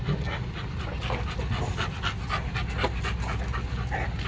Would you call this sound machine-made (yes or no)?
no